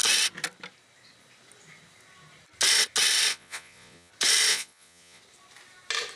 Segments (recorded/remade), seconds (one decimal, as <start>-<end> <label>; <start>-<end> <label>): 0.0-3.3 recorded; 3.3-4.1 remade; 4.1-4.5 recorded; 4.5-5.2 remade; 5.2-6.2 recorded